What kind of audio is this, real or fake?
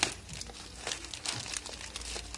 real